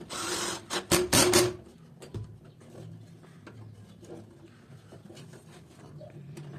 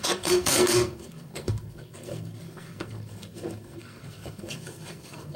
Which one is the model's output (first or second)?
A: second